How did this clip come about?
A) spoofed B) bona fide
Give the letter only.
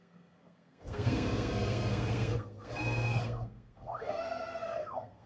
A